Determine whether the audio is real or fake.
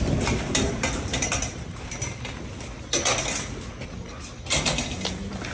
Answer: real